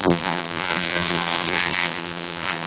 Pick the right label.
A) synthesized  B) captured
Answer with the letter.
A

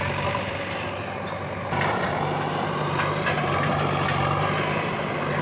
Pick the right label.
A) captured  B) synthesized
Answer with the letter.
A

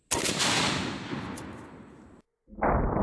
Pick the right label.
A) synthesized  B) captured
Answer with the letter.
B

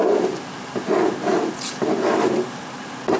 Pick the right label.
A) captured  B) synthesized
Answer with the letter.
A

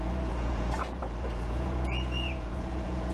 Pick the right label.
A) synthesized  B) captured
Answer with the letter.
A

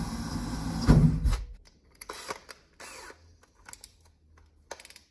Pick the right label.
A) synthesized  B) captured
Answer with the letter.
B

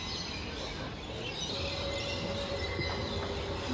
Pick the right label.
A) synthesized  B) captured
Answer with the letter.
B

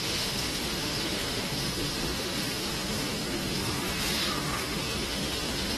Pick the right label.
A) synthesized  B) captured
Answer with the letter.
A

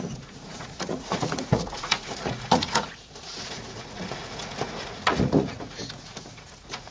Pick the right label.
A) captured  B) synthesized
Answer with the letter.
B